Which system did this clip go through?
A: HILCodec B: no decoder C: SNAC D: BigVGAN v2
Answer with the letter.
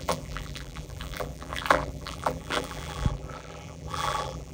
D